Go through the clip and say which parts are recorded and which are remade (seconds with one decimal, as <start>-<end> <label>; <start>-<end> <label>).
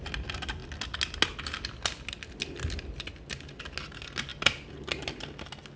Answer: 0.0-5.8 recorded